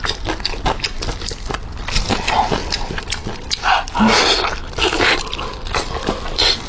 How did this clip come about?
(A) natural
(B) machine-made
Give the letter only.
A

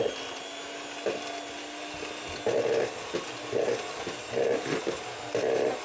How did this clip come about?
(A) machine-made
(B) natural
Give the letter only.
B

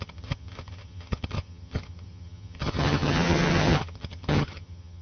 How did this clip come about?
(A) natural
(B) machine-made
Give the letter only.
B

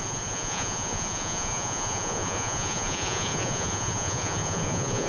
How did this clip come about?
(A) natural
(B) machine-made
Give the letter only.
B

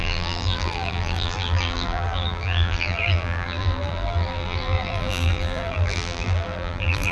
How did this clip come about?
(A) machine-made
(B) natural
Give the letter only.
A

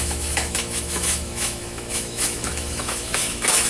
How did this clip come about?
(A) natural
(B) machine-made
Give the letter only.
B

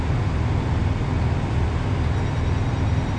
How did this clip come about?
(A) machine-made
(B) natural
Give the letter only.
B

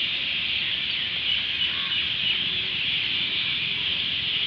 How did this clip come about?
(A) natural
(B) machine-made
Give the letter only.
A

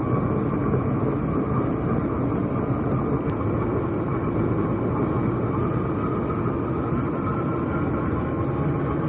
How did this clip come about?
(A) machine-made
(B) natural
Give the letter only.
B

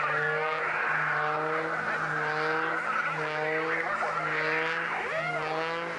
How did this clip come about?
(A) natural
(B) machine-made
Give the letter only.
A